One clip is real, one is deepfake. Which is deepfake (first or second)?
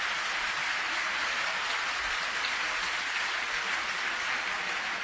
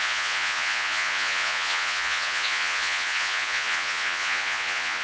second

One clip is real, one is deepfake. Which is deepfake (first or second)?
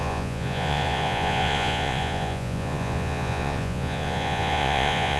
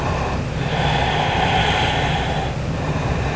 first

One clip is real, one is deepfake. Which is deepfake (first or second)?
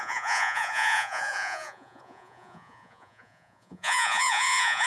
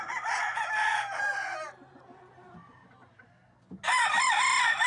first